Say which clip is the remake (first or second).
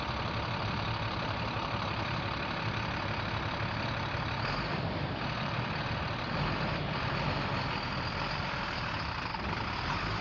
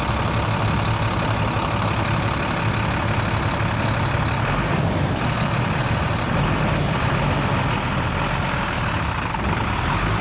first